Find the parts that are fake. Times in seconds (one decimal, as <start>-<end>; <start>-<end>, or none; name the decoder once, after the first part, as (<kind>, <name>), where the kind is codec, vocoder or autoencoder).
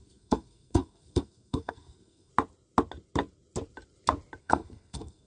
0.0-2.3 (codec, SNAC); 4.4-5.3